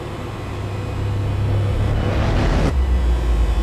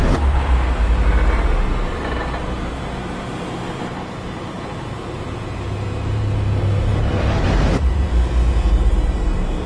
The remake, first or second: second